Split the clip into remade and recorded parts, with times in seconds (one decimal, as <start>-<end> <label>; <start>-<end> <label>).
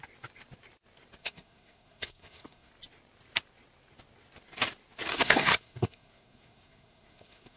0.0-1.2 recorded; 1.2-2.7 remade; 2.7-5.1 recorded; 5.1-7.6 remade